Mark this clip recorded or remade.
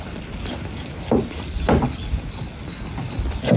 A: recorded